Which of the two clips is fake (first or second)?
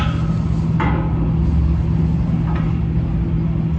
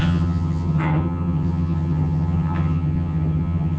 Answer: second